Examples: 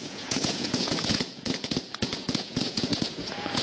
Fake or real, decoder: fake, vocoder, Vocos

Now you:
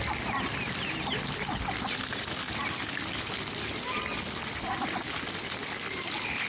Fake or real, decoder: real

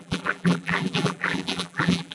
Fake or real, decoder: fake, vocoder, BigVGAN v2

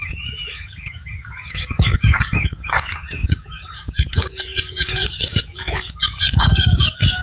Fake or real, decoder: fake, codec, DAC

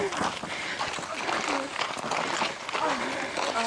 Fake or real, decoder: real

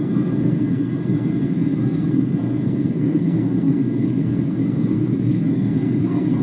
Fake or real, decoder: fake, codec, SNAC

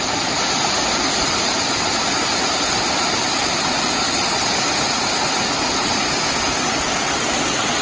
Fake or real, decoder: real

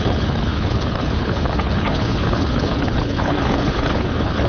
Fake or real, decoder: fake, codec, HILCodec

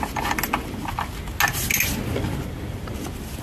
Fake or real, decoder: real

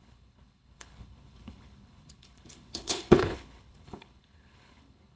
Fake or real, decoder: fake, codec, HILCodec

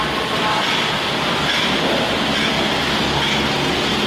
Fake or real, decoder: real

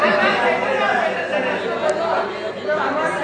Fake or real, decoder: real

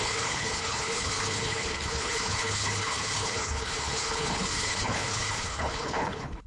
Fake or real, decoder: fake, codec, HILCodec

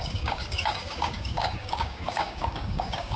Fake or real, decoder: fake, codec, DAC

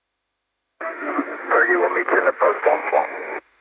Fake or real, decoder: fake, autoencoder, DAC-VAE